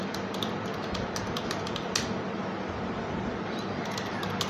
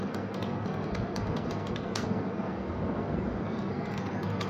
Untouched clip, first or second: first